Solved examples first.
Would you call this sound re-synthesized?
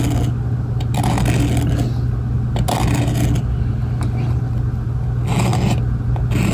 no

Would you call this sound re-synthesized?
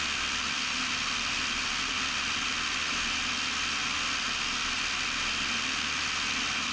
no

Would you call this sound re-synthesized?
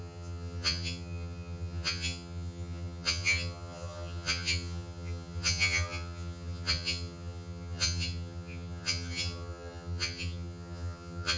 yes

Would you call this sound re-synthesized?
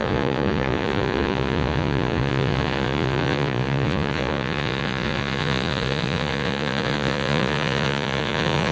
yes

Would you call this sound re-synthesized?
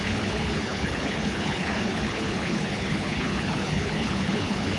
yes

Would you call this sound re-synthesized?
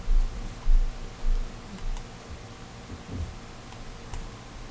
no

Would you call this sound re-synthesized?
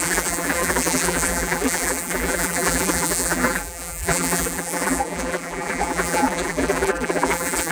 yes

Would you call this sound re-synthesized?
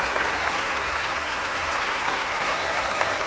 yes